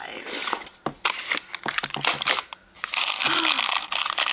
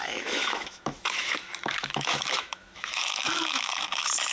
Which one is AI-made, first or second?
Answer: second